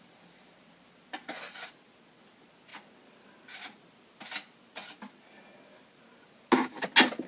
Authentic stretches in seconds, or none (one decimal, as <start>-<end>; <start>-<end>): 0.0-7.3

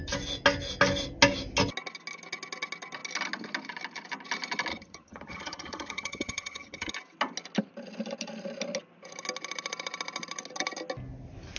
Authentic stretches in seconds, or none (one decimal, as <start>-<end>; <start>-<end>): 0.0-4.7; 6.9-11.6

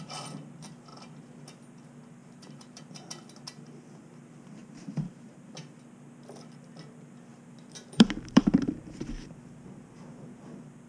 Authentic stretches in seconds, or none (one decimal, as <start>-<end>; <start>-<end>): 0.0-2.2; 2.8-4.6; 5.6-7.3; 9.3-10.9

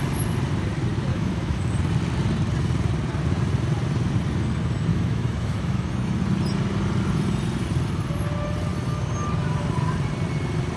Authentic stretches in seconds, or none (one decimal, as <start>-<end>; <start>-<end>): 0.0-1.1; 1.7-4.9; 6.2-10.8